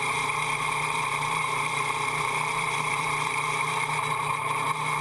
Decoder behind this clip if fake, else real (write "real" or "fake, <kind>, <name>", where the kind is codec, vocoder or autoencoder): fake, vocoder, BigVGAN v2